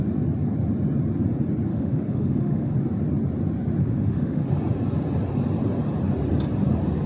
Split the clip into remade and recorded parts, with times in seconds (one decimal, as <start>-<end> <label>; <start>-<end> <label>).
0.0-1.7 recorded; 1.7-2.7 remade; 2.7-3.8 recorded; 3.8-4.5 remade; 4.5-7.1 recorded